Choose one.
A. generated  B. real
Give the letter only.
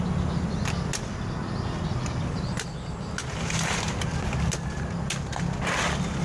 B